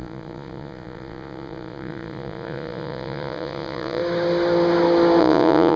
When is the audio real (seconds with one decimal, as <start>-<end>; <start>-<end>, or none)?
4.0-5.2